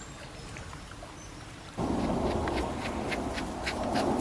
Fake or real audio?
real